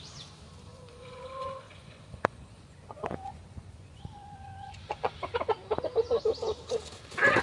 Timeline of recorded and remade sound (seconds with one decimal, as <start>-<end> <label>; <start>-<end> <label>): 0.0-0.7 recorded; 0.7-5.1 remade; 5.1-7.4 recorded